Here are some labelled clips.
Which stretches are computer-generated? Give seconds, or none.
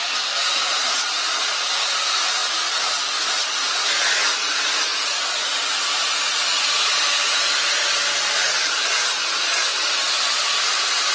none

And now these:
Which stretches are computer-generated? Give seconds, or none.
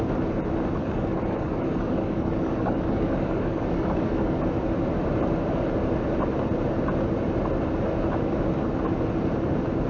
0.8-4.4 (codec, DAC)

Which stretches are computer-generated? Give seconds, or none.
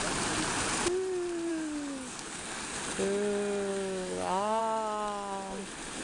1.5-2.8 (codec, DAC); 3.7-4.6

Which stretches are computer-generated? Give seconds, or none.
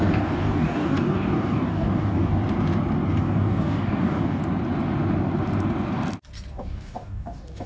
0.0-2.4 (codec, DAC); 3.2-4.4; 6.5-7.7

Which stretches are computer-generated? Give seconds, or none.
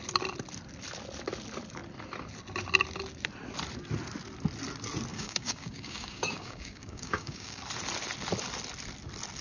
5.1-7.6 (codec, DAC)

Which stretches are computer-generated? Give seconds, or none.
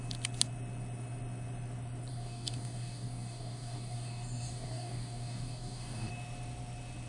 2.1-6.1 (codec, DAC)